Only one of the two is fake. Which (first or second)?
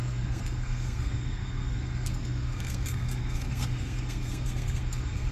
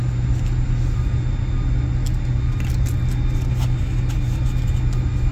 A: first